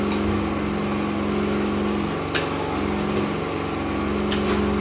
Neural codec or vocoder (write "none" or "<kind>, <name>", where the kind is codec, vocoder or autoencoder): none